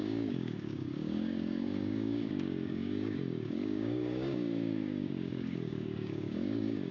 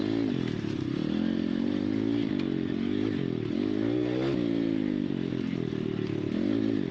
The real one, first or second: second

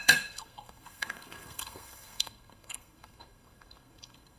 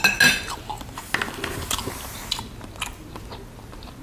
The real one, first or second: second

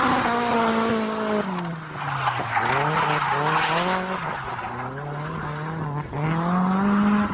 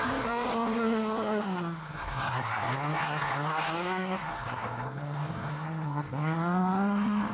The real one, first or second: first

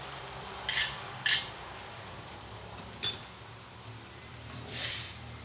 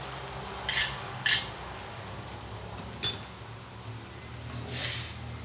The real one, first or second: second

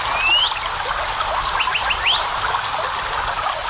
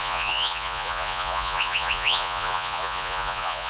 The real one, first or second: first